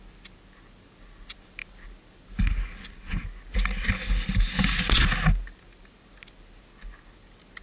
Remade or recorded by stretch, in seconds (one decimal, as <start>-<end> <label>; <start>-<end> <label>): 0.0-7.6 recorded